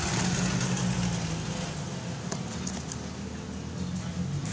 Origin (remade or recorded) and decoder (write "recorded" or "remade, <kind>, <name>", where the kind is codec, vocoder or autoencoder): recorded